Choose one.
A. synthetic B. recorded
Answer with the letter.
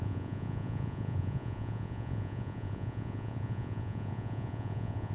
A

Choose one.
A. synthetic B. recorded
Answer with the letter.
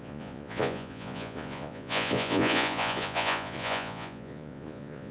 A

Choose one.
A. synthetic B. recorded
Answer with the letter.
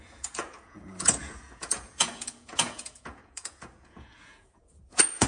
A